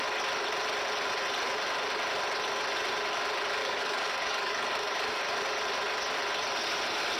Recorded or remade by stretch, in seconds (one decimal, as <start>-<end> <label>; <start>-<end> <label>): 0.0-3.6 recorded; 3.6-5.2 remade; 5.2-7.2 recorded